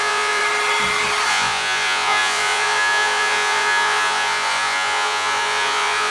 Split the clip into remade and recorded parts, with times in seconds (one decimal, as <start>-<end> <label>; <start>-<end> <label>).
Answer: 0.0-0.4 remade; 0.4-1.3 recorded; 1.3-6.1 remade